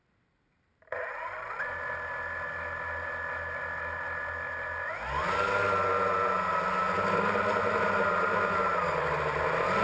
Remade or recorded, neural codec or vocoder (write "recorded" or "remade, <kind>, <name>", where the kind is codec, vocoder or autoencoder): recorded